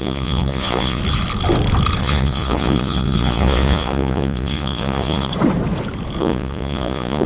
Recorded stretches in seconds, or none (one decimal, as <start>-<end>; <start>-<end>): 1.0-2.0; 5.3-6.2